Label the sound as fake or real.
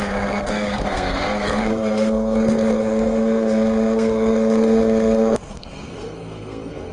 fake